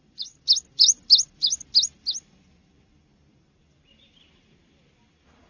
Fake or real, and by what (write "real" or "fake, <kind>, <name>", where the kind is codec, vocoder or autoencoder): real